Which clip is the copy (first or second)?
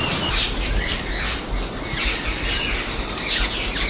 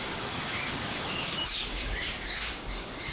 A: second